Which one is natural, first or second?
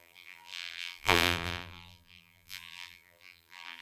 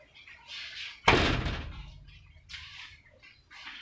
second